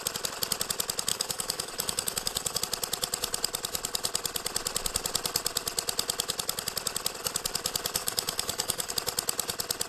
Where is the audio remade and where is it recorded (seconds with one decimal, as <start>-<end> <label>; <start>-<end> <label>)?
0.0-1.1 recorded; 1.1-2.6 remade; 2.6-8.0 recorded; 8.0-8.9 remade; 8.9-9.9 recorded